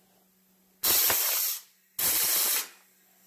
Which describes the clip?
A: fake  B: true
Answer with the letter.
B